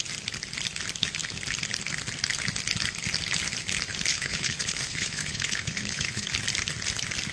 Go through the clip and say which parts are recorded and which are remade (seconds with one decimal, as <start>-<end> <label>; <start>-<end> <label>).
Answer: 0.0-4.1 recorded; 4.1-6.3 remade; 6.3-7.3 recorded

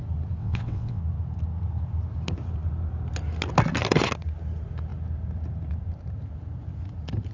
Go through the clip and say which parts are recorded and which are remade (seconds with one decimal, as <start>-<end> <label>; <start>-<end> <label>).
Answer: 0.0-0.4 recorded; 0.4-1.0 remade; 1.0-7.3 recorded

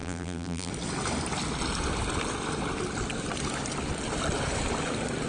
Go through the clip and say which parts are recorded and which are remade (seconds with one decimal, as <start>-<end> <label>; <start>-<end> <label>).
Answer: 0.0-0.7 remade; 0.7-5.3 recorded

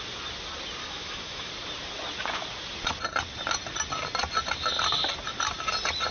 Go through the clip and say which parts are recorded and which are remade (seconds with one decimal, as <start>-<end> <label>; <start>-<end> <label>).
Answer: 0.0-0.8 recorded; 0.8-1.5 remade; 1.5-6.1 recorded